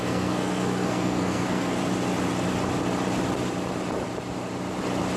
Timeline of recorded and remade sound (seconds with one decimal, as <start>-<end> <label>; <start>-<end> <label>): 0.0-1.8 remade; 1.8-5.2 recorded